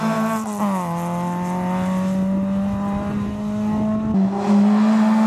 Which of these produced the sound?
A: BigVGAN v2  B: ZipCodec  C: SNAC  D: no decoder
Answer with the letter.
D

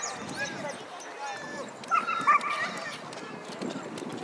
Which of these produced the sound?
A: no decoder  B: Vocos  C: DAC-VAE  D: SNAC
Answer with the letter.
A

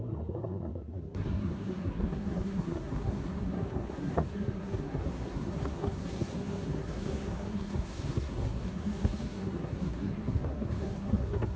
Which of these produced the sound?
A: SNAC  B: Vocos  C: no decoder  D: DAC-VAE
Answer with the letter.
A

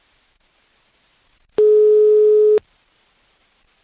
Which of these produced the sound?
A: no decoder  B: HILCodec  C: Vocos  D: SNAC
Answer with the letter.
A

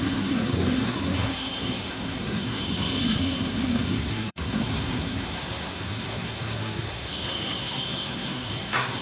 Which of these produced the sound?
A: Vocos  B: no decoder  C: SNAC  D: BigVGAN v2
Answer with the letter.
C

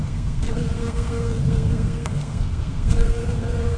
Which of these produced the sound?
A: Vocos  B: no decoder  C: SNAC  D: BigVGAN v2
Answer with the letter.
C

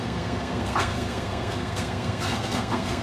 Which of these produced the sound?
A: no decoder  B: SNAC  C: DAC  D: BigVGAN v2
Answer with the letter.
B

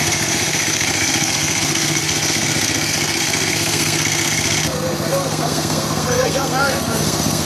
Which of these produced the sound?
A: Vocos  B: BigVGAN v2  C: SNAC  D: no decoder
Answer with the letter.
C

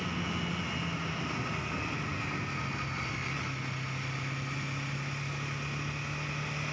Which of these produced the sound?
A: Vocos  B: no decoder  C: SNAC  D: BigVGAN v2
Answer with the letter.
B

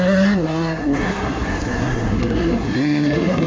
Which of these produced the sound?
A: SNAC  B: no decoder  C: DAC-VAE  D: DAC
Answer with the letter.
A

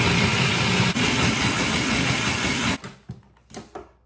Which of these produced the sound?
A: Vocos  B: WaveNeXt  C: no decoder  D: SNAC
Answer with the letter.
C